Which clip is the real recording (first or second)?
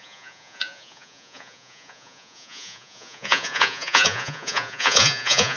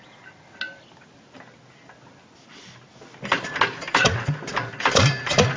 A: second